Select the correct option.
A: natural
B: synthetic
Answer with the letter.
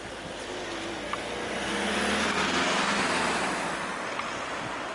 A